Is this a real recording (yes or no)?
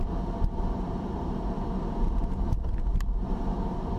no